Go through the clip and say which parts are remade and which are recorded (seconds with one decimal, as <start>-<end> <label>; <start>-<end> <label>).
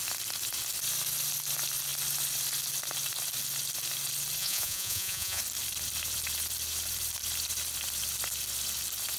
0.0-4.4 recorded; 4.4-5.4 remade; 5.4-9.2 recorded